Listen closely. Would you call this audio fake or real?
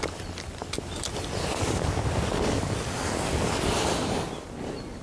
real